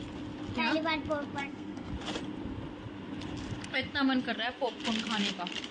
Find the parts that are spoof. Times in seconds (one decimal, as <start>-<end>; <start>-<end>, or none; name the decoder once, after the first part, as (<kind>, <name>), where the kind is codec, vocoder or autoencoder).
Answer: 1.4-1.9 (codec, SNAC)